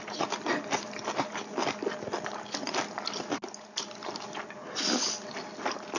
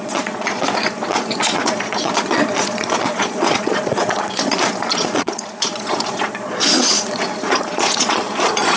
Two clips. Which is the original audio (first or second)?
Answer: first